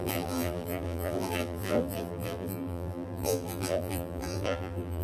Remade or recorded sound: remade